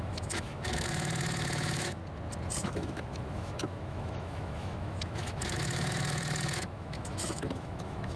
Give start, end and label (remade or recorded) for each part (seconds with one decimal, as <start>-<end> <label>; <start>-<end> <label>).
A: 0.0-2.0 remade; 2.0-2.6 recorded; 2.6-8.2 remade